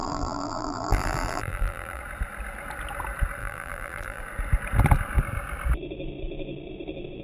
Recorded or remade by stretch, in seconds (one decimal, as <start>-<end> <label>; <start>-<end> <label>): 0.0-2.0 remade; 2.0-3.4 recorded; 3.4-4.2 remade; 4.2-7.2 recorded